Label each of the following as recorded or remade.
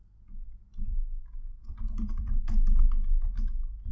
recorded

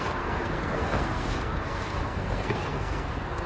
remade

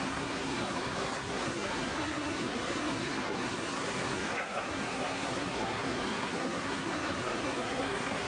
remade